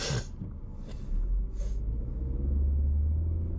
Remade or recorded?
recorded